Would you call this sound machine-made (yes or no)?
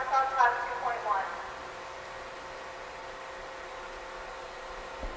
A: no